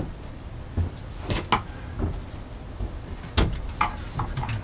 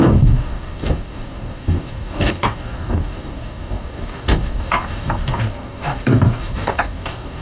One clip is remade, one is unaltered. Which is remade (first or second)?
second